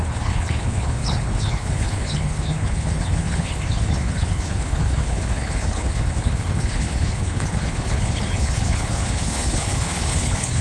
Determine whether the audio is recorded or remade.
remade